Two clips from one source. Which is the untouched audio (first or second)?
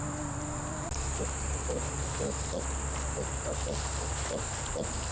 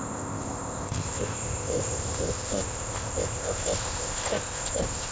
first